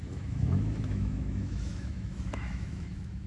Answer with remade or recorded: remade